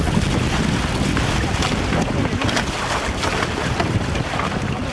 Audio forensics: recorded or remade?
recorded